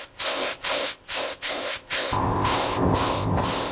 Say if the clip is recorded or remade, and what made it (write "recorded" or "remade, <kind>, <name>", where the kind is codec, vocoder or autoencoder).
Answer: remade, codec, ZipCodec